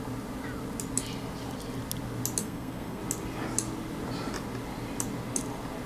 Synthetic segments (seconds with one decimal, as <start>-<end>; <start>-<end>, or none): 2.4-3.0